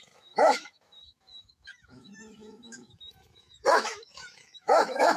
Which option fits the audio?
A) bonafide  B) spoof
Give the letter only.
B